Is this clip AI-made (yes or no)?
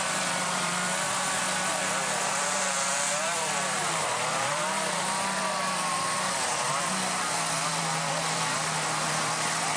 yes